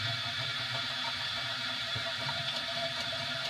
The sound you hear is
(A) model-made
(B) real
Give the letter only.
A